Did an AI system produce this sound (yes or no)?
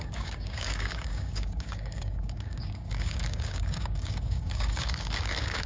yes